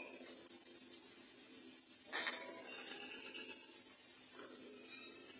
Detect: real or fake real